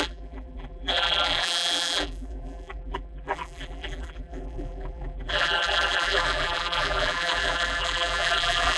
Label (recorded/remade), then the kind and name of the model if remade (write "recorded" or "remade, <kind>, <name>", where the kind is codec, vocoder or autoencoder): remade, vocoder, BigVGAN v2